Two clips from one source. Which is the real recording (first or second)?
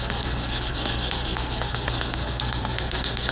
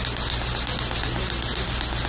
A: second